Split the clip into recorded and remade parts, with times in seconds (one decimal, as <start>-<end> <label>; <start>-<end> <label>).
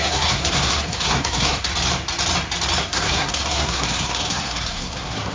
0.0-1.7 remade; 1.7-2.8 recorded; 2.8-5.3 remade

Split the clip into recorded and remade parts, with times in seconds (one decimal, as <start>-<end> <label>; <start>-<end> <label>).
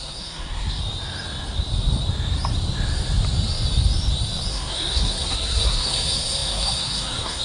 0.0-0.8 remade; 0.8-4.5 recorded; 4.5-7.4 remade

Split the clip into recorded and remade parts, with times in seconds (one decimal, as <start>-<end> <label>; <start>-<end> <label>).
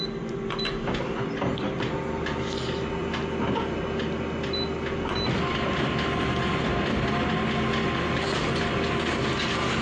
0.0-9.8 recorded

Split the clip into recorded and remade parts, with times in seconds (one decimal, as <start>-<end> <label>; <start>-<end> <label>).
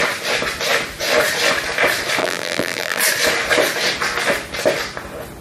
0.0-2.2 recorded; 2.2-3.0 remade; 3.0-5.4 recorded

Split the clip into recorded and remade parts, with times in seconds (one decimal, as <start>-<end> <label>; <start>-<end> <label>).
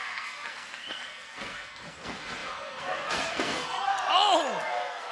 0.0-3.9 remade; 3.9-4.6 recorded; 4.6-5.1 remade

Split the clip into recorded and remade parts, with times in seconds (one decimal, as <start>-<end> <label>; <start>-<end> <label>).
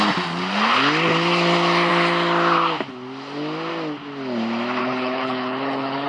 0.0-4.8 recorded; 4.8-6.1 remade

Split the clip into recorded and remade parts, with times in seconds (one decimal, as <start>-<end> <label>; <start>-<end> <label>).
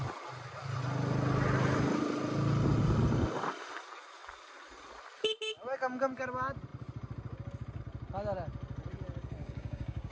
0.0-9.4 recorded; 9.4-10.1 remade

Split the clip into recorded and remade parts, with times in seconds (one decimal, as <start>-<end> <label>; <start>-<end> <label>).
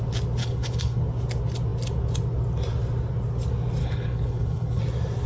0.0-0.4 recorded; 0.4-1.0 remade; 1.0-3.8 recorded; 3.8-4.8 remade; 4.8-5.3 recorded